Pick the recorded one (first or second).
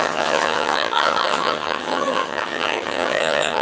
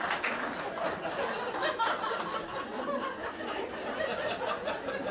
second